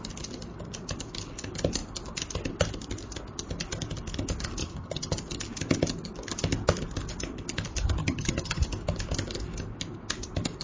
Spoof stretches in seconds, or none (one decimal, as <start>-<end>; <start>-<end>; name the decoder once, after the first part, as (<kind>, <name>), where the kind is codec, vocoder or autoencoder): 4.6-5.1 (vocoder, HiFi-GAN); 8.0-8.6